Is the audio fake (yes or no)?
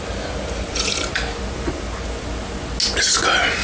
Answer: no